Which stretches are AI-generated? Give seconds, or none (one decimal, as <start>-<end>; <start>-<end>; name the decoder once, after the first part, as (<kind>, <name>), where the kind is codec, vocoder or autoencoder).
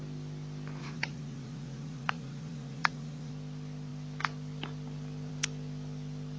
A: 0.8-3.3 (vocoder, Vocos)